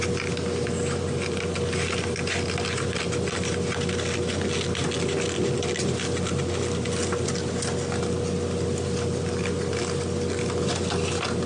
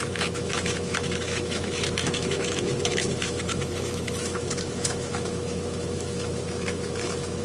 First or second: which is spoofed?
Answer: second